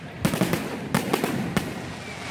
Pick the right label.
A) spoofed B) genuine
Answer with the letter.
B